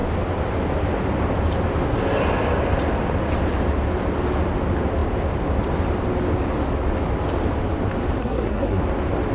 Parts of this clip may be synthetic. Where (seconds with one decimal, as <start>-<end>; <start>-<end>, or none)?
8.2-8.8